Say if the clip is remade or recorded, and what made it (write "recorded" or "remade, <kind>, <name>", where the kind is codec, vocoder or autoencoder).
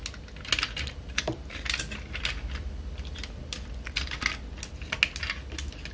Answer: recorded